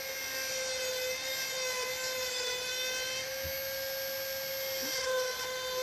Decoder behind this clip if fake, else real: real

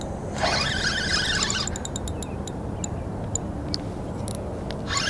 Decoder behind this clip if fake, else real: real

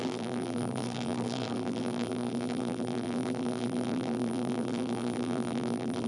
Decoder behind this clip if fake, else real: fake, vocoder, BigVGAN v2